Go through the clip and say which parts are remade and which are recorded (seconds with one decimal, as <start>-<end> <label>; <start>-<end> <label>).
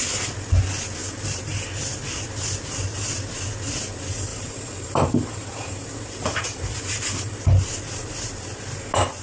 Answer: 0.0-1.0 recorded; 1.0-1.7 remade; 1.7-4.3 recorded; 4.3-7.4 remade; 7.4-9.2 recorded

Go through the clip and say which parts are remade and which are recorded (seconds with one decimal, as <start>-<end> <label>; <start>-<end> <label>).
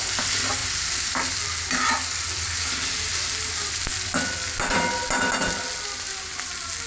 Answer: 0.0-6.9 recorded